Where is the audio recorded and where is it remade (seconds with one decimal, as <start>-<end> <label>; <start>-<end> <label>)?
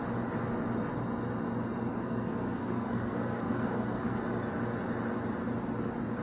0.0-1.9 recorded; 1.9-4.2 remade; 4.2-6.2 recorded